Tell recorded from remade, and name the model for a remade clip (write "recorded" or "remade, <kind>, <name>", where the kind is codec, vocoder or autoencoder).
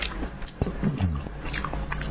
recorded